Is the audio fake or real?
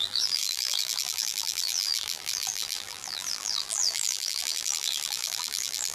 fake